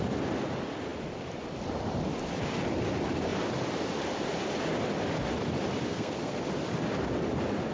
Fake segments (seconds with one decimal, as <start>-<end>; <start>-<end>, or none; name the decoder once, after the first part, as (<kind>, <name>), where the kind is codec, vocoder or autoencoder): 5.9-6.4 (codec, SNAC)

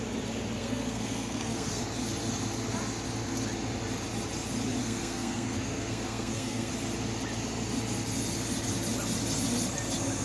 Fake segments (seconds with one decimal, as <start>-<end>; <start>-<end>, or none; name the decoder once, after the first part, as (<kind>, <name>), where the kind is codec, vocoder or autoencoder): 0.6-1.8 (codec, SNAC); 4.8-6.7

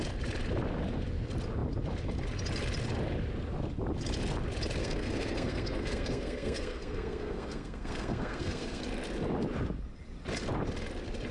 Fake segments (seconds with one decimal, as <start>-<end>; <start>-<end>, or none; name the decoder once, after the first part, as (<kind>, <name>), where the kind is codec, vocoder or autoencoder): 4.8-8.8 (codec, SNAC)

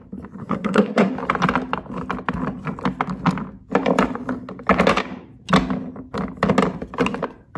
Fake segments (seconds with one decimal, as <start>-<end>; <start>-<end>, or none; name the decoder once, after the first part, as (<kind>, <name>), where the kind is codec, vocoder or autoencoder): 0.4-1.1 (codec, SNAC)

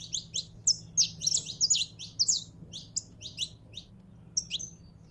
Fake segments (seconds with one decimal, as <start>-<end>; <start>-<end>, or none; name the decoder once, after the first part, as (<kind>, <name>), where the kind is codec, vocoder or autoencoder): none

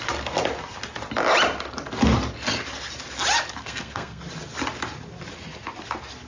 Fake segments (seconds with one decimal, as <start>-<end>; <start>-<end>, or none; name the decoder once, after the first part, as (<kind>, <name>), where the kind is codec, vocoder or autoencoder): 3.6-4.2 (codec, SNAC)

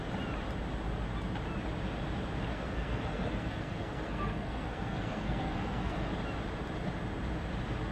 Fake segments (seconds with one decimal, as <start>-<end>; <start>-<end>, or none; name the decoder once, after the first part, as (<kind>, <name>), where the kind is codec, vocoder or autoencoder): 2.5-6.1 (codec, SNAC)